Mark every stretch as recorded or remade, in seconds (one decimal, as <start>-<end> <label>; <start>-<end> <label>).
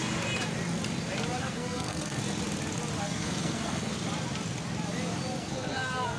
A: 0.0-1.4 recorded; 1.4-2.2 remade; 2.2-3.0 recorded; 3.0-3.9 remade; 3.9-5.4 recorded; 5.4-6.2 remade